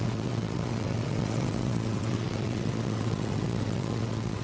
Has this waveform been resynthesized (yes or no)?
yes